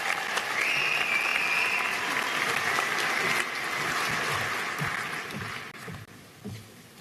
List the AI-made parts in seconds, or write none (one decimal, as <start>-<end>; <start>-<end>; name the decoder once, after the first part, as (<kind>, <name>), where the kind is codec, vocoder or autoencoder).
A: none